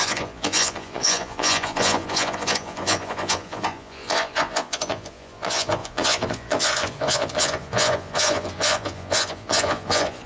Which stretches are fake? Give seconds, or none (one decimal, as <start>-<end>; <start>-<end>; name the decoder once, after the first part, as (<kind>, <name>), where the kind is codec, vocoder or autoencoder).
0.0-10.3 (vocoder, Vocos)